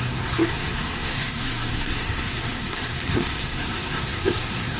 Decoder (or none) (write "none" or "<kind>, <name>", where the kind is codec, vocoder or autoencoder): codec, SNAC